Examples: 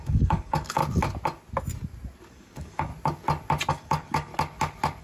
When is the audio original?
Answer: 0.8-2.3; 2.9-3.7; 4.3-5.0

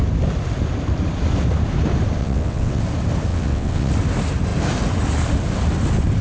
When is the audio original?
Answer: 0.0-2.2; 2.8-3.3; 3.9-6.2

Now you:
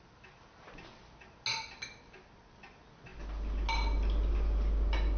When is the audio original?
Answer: 0.0-5.2

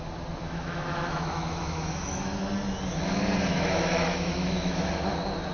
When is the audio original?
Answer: 0.0-0.4; 2.4-3.5; 4.9-5.5